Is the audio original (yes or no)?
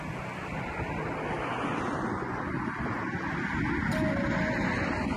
yes